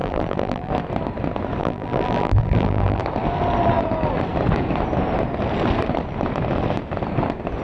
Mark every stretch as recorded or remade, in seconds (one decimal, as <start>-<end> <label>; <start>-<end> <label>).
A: 0.0-0.7 remade; 0.7-1.6 recorded; 1.6-3.0 remade; 3.0-7.6 recorded